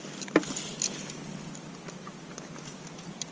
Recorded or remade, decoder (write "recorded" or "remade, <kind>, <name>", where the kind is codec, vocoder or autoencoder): recorded